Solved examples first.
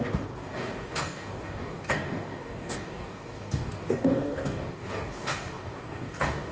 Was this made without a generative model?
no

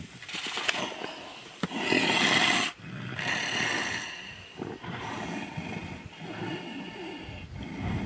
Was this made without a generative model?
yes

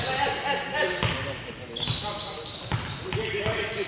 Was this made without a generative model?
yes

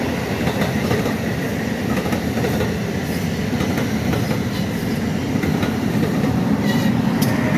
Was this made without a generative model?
yes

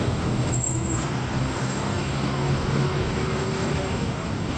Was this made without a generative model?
no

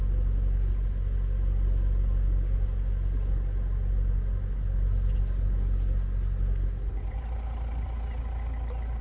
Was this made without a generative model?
yes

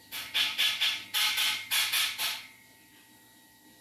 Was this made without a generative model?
yes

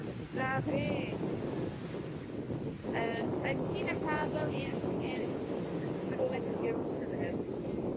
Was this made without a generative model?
yes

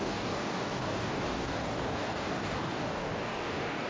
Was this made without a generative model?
no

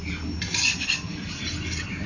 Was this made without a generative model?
yes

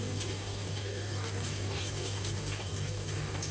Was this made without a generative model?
no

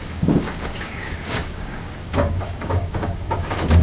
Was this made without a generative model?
no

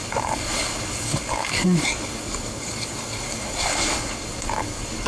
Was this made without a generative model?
no